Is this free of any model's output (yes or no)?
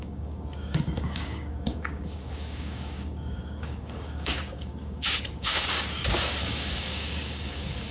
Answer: no